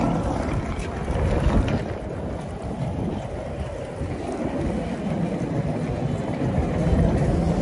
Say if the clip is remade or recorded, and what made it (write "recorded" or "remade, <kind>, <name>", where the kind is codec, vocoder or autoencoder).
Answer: recorded